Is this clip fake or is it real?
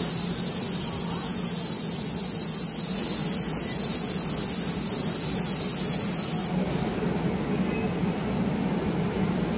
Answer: real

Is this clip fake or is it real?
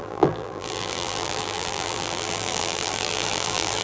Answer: fake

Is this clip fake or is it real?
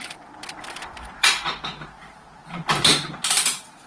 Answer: real